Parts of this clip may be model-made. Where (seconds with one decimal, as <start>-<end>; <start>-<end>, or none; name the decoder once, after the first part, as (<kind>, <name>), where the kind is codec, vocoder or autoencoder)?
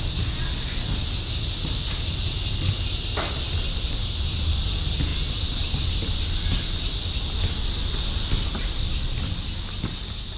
none